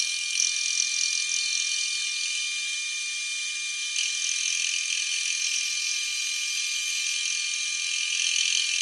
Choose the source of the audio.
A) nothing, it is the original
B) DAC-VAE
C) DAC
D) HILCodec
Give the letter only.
A